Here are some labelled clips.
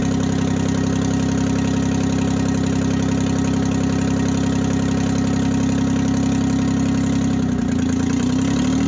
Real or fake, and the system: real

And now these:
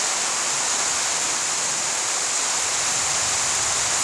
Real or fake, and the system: real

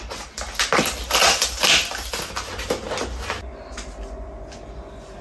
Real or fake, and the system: real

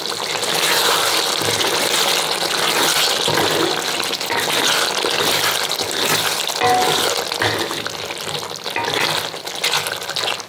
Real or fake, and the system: real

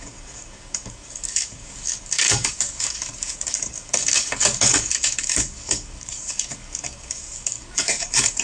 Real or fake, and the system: fake, codec, DAC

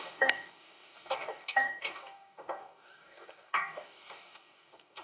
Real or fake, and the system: fake, codec, DAC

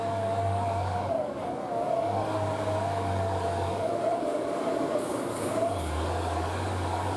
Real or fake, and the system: fake, codec, DAC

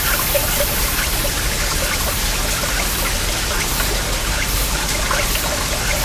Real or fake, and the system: real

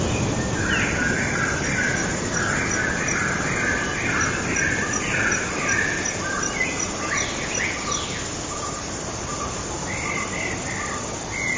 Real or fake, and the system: real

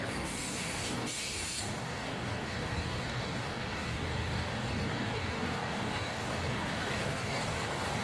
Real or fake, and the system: fake, codec, DAC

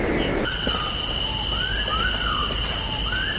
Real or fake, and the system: real